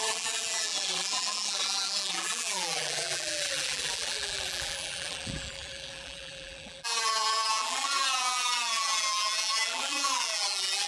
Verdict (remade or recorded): remade